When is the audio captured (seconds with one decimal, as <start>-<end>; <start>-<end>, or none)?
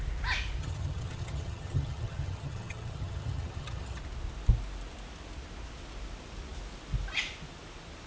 0.0-0.6; 4.0-8.1